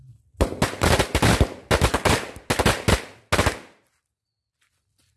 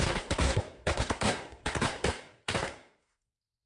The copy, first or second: second